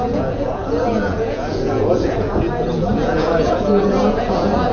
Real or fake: fake